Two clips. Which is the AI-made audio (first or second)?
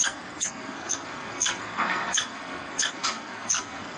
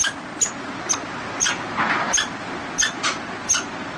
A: first